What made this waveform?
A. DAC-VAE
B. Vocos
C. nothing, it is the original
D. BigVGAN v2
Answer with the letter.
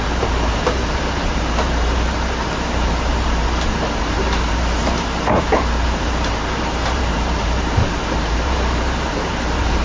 D